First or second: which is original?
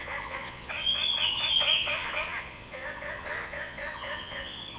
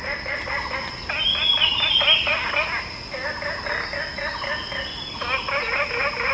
second